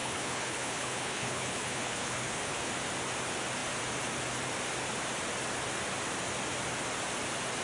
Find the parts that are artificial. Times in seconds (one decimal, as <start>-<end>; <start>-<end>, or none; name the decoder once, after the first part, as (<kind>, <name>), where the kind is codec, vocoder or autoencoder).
0.0-2.7 (codec, HILCodec)